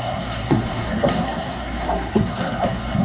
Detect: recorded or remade remade